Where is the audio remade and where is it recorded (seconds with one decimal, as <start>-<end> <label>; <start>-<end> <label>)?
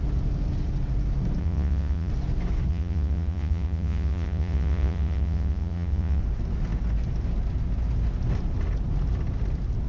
0.0-1.4 recorded; 1.4-2.1 remade; 2.1-2.7 recorded; 2.7-6.2 remade; 6.2-9.9 recorded